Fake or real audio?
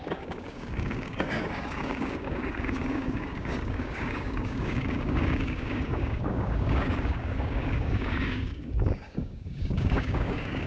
fake